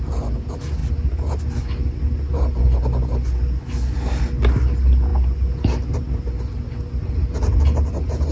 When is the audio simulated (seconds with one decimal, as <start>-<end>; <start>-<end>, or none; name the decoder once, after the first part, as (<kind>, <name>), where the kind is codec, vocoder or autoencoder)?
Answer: none